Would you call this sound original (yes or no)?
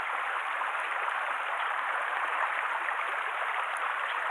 yes